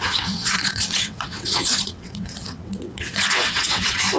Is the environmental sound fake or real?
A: fake